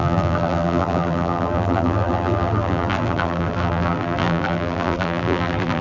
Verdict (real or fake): fake